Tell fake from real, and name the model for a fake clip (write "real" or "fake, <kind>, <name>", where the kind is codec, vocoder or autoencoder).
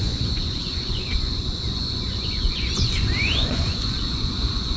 fake, vocoder, Vocos